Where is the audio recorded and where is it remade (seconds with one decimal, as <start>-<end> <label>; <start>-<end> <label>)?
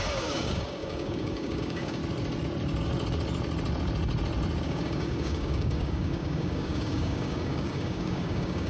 0.0-2.0 remade; 2.0-4.6 recorded; 4.6-8.7 remade